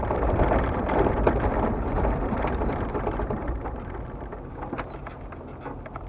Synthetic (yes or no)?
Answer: no